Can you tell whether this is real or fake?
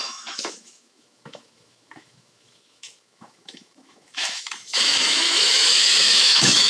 fake